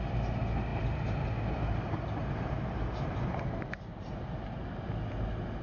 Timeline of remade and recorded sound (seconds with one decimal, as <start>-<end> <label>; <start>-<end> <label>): 0.0-0.7 recorded; 0.7-1.3 remade; 1.3-2.2 recorded; 2.2-4.9 remade; 4.9-5.6 recorded